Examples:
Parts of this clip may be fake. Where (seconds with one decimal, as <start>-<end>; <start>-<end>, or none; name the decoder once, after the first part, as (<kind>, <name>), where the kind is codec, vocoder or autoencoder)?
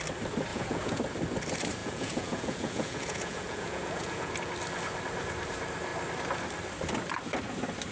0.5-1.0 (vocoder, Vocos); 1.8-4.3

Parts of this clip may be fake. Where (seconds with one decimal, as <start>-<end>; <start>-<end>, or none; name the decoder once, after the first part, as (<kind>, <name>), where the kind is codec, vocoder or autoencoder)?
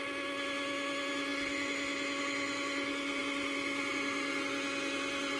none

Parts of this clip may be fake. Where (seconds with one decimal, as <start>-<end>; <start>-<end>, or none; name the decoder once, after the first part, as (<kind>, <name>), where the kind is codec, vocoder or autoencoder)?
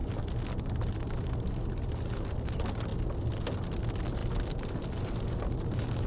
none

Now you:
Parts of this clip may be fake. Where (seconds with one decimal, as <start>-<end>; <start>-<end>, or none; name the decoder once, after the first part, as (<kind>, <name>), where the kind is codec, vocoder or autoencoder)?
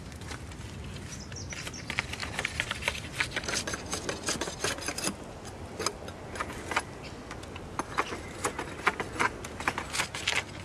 none